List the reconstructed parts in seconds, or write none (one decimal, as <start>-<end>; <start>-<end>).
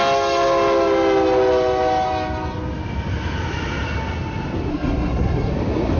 4.7-5.5